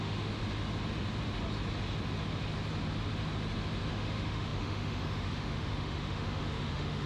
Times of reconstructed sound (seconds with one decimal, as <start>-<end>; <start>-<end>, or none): 0.0-0.4; 3.9-7.1